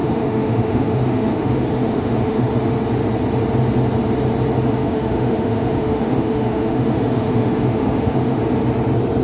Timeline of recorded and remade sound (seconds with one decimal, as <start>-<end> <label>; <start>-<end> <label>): 0.0-2.5 remade; 2.5-4.8 recorded; 4.8-8.4 remade; 8.4-9.2 recorded

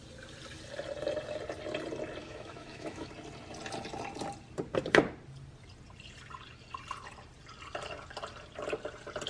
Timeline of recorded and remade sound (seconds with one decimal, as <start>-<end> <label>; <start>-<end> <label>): 0.0-2.2 recorded; 2.2-3.1 remade; 3.1-9.3 recorded

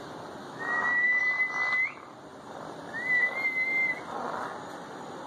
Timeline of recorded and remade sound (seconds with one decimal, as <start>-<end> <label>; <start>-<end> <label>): 0.0-0.4 recorded; 0.4-1.2 remade; 1.2-5.3 recorded

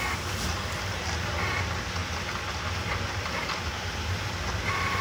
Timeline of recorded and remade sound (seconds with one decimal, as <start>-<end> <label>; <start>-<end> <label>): 0.0-5.0 recorded

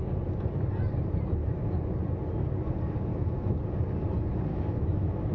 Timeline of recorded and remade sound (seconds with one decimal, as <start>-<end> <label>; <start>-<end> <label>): 0.0-1.4 recorded; 1.4-1.9 remade; 1.9-3.1 recorded; 3.1-3.6 remade; 3.6-4.5 recorded; 4.5-5.3 remade

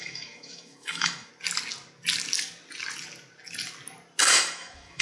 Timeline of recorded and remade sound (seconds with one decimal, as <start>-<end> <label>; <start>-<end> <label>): 0.0-1.3 remade; 1.3-4.2 recorded; 4.2-5.0 remade